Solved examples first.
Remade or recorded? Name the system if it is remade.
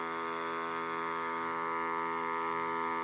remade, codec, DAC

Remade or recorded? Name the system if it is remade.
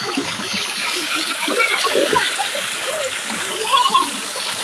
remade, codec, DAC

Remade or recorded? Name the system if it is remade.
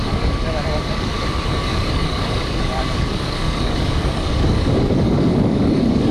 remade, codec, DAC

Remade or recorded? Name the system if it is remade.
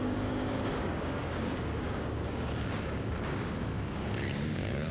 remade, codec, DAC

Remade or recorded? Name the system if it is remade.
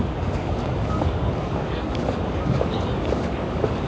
remade, codec, DAC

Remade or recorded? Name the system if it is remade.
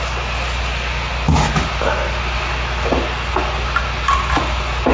recorded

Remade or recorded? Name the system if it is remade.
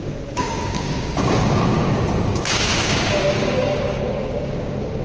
remade, codec, DAC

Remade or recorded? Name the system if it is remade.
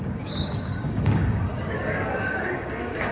remade, codec, DAC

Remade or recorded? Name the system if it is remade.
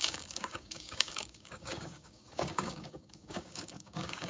remade, codec, DAC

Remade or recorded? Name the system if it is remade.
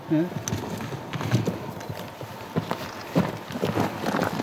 recorded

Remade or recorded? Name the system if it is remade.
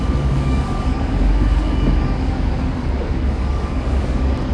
remade, codec, DAC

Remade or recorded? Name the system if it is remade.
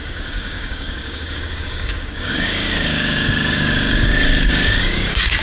remade, codec, DAC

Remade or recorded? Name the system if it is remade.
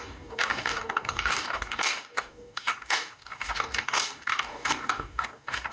remade, codec, DAC